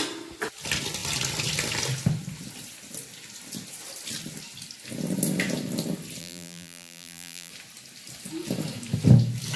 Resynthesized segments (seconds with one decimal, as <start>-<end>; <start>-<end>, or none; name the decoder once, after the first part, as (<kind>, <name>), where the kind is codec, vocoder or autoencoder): 6.2-7.5 (vocoder, BigVGAN v2)